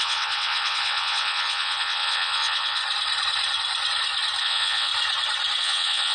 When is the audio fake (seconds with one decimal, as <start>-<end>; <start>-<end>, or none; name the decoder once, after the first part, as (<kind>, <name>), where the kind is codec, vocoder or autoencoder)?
0.0-2.8 (vocoder, WaveNeXt); 4.4-4.9; 5.6-6.1